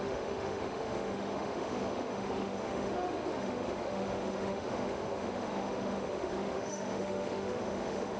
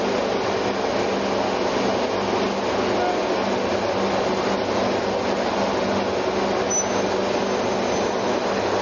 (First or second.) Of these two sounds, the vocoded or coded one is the first